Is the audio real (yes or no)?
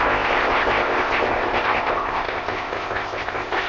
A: no